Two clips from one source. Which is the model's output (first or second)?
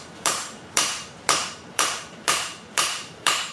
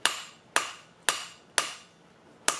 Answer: first